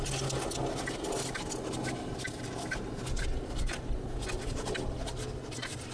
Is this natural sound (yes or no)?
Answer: yes